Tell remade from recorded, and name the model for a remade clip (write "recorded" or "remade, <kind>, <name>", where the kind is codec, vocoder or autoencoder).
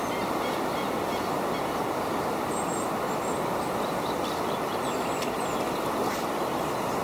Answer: recorded